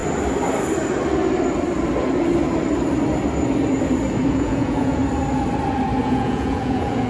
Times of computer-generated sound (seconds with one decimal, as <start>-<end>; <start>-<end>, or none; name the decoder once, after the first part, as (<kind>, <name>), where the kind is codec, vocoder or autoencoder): 4.3-5.0 (vocoder, Vocos); 6.0-7.1